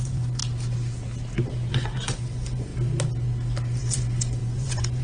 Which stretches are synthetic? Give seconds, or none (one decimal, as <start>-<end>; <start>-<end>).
0.0-0.4; 1.7-2.7; 3.8-5.0